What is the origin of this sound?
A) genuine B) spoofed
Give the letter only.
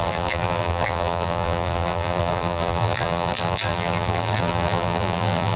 B